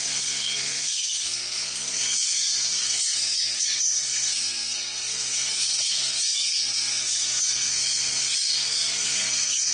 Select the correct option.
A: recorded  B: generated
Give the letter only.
B